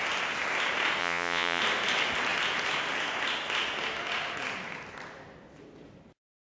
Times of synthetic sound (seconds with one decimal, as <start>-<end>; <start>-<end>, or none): 1.0-1.6